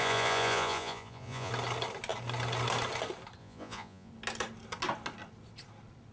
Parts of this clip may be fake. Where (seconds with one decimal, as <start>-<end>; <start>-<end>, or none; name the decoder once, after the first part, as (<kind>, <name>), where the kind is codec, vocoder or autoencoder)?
0.0-1.5 (vocoder, Vocos); 3.4-4.1